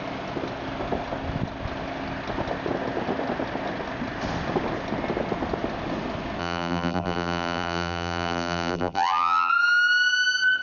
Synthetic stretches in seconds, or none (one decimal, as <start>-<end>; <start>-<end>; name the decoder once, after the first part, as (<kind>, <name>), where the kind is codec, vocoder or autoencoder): 6.4-9.5 (vocoder, BigVGAN v2)